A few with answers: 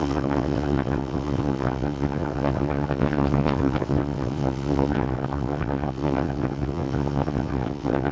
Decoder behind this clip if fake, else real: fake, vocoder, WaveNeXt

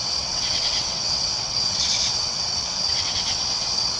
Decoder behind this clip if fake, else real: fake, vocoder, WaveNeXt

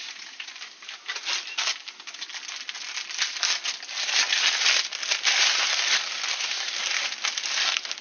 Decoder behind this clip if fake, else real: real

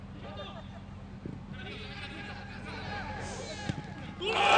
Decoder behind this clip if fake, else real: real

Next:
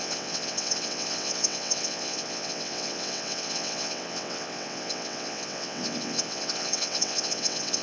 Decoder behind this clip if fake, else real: fake, vocoder, WaveNeXt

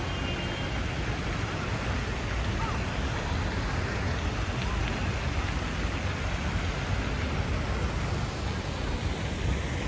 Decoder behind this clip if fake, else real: real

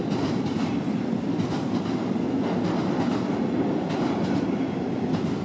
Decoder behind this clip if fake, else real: real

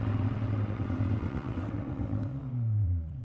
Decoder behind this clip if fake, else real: fake, vocoder, WaveNeXt